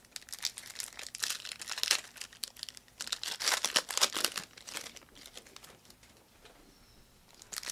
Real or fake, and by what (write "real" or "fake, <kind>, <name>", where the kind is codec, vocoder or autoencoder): real